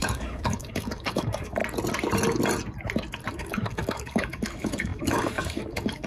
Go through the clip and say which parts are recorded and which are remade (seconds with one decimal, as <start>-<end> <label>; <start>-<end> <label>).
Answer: 0.0-1.6 remade; 1.6-3.3 recorded; 3.3-6.1 remade